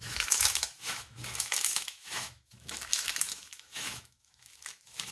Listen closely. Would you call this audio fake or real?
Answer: fake